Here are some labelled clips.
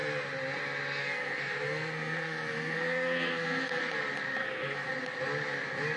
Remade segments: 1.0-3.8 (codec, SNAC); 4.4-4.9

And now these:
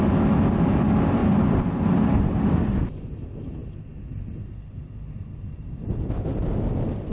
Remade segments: none

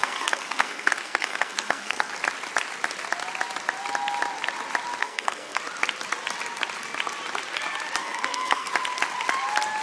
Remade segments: 0.0-2.1 (codec, SNAC); 5.0-5.6; 8.0-8.7

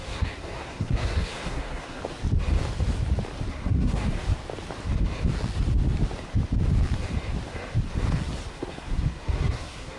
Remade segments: 0.0-2.0 (codec, SNAC); 3.5-4.3; 8.5-10.0

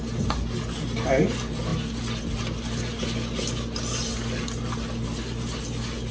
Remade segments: none

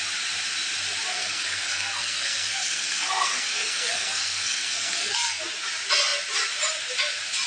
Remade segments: 1.1-5.4 (codec, SNAC)